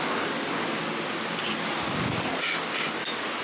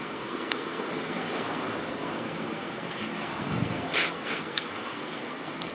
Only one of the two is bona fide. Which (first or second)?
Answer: first